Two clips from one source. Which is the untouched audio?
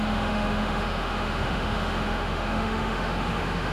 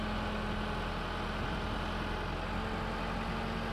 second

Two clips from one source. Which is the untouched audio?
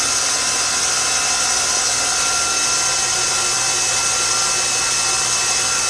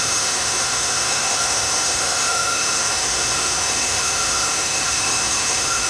first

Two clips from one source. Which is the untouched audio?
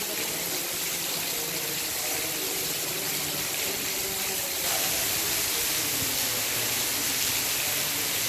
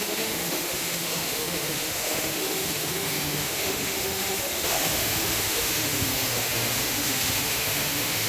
first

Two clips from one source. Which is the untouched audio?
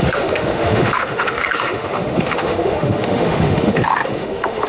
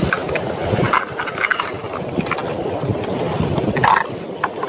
second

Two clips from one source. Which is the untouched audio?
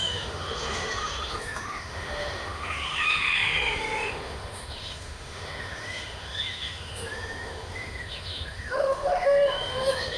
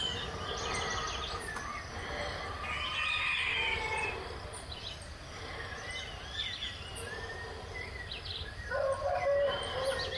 second